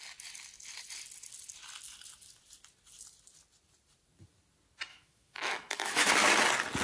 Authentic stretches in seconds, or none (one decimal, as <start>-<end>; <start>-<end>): 0.0-4.9; 6.1-6.8